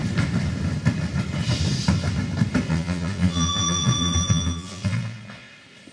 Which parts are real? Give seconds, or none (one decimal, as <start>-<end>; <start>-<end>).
0.0-2.7; 5.5-5.9

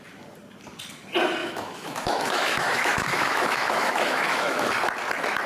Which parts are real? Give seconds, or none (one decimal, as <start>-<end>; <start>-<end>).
0.0-1.4; 4.7-5.5

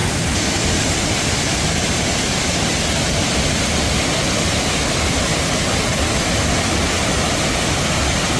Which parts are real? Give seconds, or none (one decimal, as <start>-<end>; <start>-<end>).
5.3-6.8